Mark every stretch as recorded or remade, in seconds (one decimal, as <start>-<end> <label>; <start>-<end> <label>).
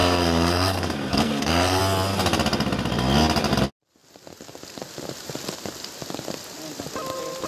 0.0-1.8 remade; 1.8-7.5 recorded